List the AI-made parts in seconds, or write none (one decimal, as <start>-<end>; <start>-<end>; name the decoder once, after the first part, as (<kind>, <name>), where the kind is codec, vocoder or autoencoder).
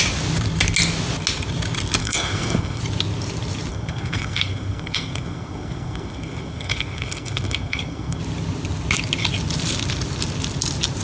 2.0-2.8 (codec, SNAC); 3.7-8.2